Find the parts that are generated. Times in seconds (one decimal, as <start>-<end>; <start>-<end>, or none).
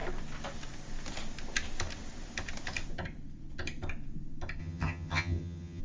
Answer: 4.6-5.8